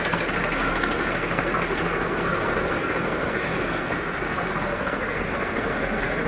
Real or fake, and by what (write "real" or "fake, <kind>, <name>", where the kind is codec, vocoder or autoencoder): fake, codec, SNAC